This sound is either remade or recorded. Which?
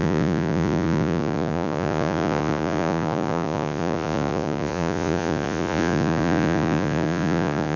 remade